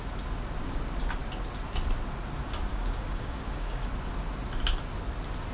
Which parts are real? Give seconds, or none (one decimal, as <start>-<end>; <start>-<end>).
0.0-2.7; 3.9-5.5